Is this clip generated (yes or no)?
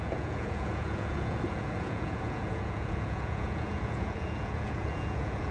yes